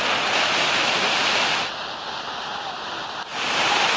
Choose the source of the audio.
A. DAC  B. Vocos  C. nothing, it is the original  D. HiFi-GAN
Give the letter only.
C